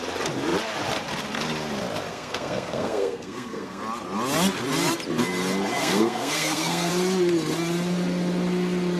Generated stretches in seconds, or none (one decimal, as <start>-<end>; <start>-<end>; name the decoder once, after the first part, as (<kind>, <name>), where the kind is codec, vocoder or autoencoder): 2.1-3.8 (codec, SNAC); 5.8-6.9